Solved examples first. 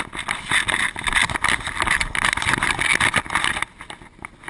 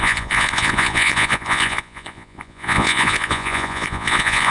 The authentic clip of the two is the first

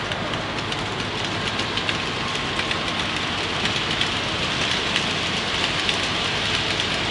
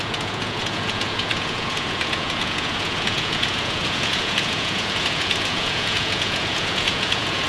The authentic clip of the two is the first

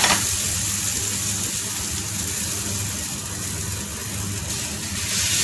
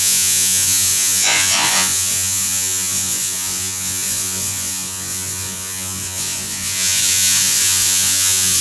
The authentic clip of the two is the first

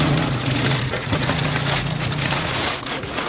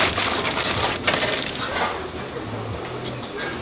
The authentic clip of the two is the second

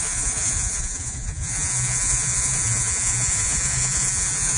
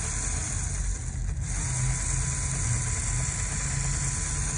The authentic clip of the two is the second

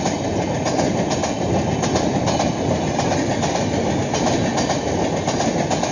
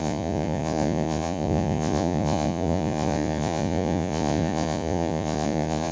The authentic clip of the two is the first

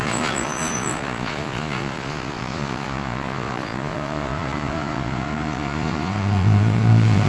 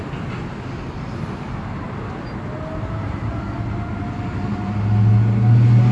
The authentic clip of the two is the second